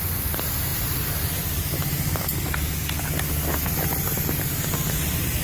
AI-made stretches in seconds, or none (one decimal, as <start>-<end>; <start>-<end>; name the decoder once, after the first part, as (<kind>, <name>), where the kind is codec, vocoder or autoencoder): 0.7-2.3 (vocoder, BigVGAN v2)